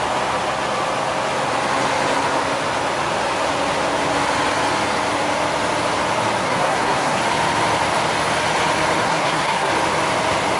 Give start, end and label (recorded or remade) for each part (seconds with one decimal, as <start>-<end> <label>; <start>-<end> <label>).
0.0-6.4 recorded; 6.4-7.2 remade; 7.2-9.0 recorded; 9.0-9.7 remade; 9.7-10.6 recorded